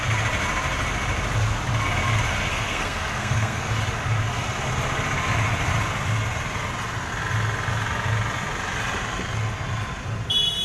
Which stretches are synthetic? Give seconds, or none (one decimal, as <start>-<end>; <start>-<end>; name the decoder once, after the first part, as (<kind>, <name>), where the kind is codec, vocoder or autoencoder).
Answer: 2.5-3.7 (codec, SNAC)

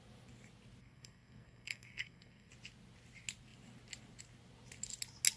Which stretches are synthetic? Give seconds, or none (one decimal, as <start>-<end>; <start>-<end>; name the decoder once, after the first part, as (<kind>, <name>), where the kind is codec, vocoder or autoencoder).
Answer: 0.8-2.5 (codec, SNAC)